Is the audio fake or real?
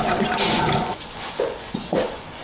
fake